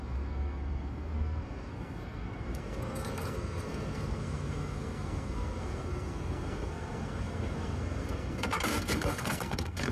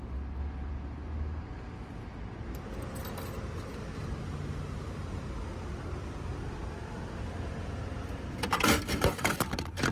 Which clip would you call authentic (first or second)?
second